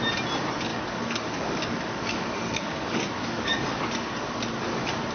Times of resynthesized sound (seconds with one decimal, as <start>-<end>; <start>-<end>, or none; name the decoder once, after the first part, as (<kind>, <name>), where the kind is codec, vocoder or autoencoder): 0.7-3.8 (codec, DAC)